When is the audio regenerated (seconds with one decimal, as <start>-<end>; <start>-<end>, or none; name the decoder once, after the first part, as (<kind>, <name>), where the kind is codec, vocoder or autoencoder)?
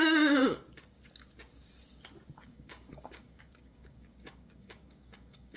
0.0-0.4 (codec, DAC); 2.4-5.6